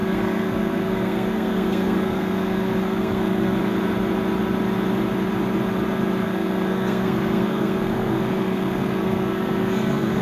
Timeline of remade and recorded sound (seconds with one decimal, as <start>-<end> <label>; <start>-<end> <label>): 0.0-3.6 remade; 3.6-6.2 recorded; 6.2-10.2 remade